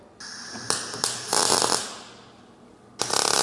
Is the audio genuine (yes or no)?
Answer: yes